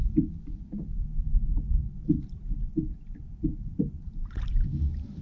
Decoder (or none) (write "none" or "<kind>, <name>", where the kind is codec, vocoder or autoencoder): none